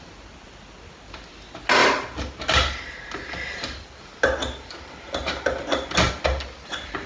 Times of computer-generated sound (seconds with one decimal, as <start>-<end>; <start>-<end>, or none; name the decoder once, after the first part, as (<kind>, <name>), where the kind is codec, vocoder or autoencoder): none